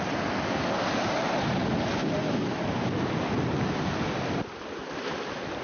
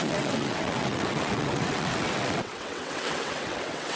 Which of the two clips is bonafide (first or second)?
first